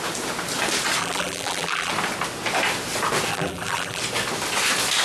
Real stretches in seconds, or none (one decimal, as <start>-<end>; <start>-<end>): 0.0-1.0; 1.9-3.3; 4.0-5.0